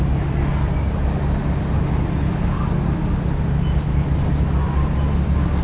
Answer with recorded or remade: recorded